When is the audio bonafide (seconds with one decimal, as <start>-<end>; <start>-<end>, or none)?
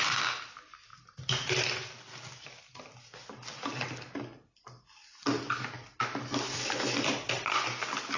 0.0-8.2